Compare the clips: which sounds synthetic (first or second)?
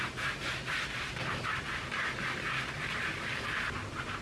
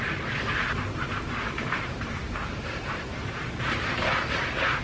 second